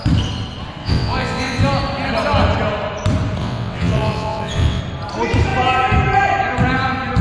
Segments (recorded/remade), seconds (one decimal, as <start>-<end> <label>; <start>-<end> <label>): 0.0-0.8 recorded; 0.8-1.6 remade; 1.6-3.4 recorded; 3.4-4.8 remade; 4.8-7.2 recorded